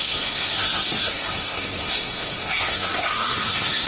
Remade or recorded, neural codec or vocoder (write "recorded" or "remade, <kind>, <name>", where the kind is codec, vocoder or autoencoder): remade, codec, SNAC